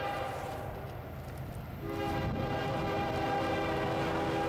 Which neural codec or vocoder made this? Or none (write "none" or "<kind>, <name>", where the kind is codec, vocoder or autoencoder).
none